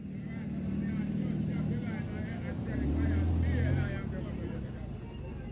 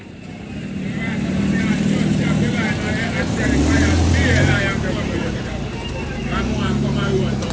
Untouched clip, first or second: first